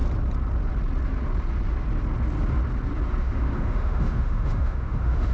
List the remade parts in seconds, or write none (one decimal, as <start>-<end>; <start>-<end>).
3.2-5.3